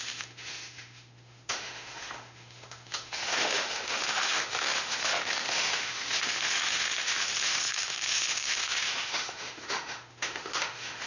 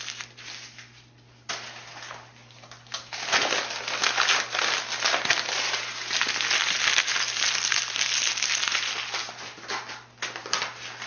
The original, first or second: second